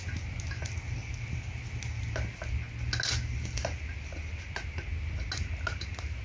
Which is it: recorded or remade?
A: recorded